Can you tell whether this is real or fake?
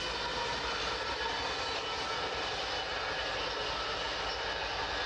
real